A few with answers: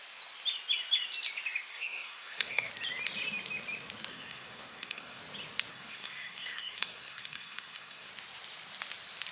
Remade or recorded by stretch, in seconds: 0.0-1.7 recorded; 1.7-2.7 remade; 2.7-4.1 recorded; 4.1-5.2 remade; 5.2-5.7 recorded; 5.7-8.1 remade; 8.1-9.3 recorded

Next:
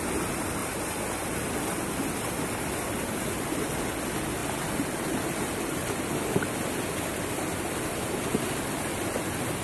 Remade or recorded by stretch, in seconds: 0.0-9.6 recorded

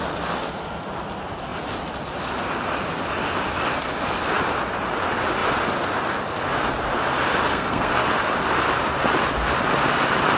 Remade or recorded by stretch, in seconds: 0.0-7.5 recorded; 7.5-8.1 remade; 8.1-10.4 recorded

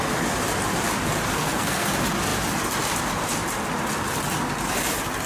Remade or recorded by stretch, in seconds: 0.0-1.3 recorded; 1.3-1.9 remade; 1.9-5.3 recorded

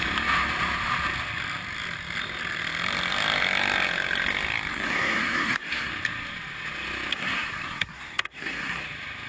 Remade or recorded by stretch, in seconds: 0.0-4.7 recorded; 4.7-5.9 remade; 5.9-7.1 recorded; 7.1-8.8 remade; 8.8-9.3 recorded

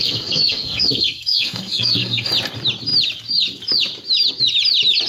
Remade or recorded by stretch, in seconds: 0.0-2.3 remade; 2.3-5.1 recorded